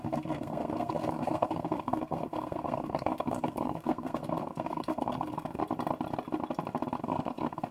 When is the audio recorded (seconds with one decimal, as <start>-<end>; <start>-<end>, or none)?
5.6-7.0